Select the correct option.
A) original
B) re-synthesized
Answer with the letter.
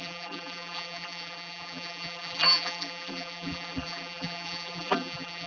B